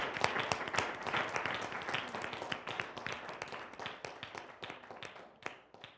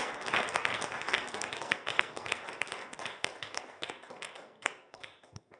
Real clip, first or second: first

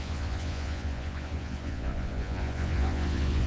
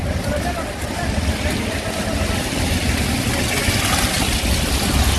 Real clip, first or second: second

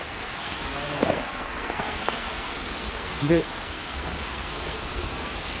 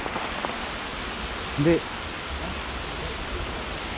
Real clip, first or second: second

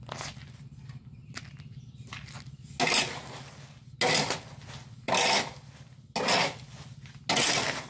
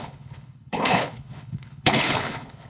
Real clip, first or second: first